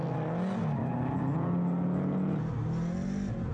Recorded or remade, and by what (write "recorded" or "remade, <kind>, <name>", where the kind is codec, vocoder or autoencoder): recorded